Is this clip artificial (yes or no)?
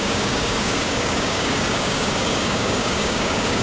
yes